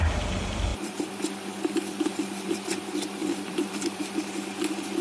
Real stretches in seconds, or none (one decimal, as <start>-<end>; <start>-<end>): 0.0-0.7; 1.2-2.1; 2.8-3.2; 4.0-5.0